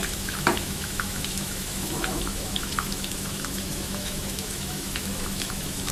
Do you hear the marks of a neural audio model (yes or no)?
yes